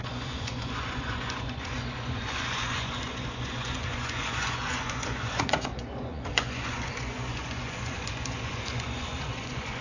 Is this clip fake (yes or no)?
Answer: yes